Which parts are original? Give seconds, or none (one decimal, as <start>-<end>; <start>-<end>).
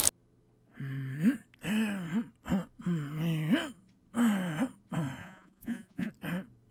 0.0-5.2; 6.1-6.7